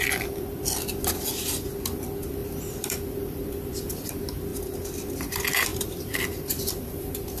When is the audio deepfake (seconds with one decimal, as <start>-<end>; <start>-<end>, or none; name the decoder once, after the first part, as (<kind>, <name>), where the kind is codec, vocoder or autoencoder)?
2.4-4.1 (vocoder, BigVGAN v2); 5.7-7.4